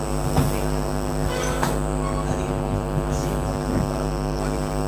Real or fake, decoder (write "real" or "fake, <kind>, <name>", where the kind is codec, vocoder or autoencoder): fake, vocoder, BigVGAN v2